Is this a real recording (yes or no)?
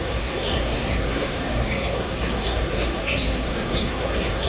no